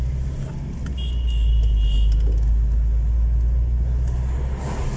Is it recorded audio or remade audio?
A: recorded